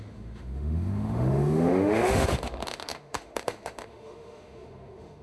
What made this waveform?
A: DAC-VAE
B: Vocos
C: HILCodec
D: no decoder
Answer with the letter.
A